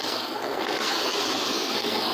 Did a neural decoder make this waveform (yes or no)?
yes